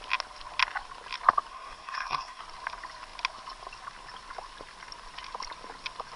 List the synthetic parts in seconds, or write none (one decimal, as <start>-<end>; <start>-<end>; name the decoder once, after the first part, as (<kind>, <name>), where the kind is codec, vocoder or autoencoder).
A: 1.5-2.4 (codec, SNAC)